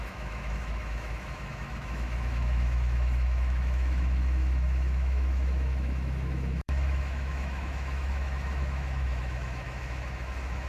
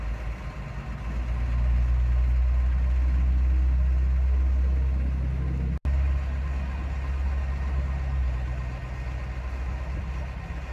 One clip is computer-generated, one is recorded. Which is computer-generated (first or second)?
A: first